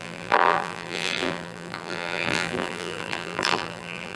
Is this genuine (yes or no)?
no